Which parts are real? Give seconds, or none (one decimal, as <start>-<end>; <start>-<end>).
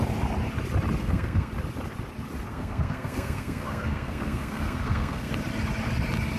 0.0-1.0; 1.5-2.5; 5.3-6.4